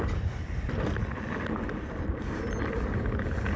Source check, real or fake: real